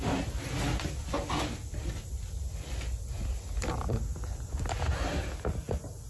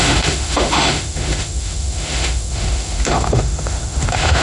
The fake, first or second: second